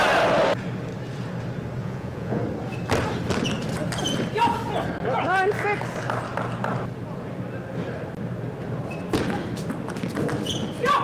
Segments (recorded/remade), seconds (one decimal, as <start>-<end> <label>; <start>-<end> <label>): 0.0-1.8 recorded; 1.8-2.4 remade; 2.4-11.0 recorded